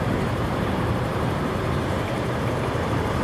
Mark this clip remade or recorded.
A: remade